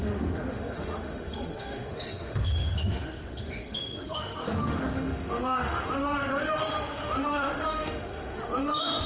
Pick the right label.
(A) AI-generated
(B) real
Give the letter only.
A